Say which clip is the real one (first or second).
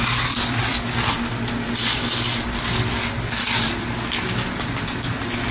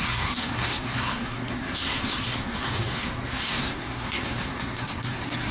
first